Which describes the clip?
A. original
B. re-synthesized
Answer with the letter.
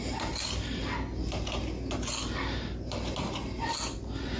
A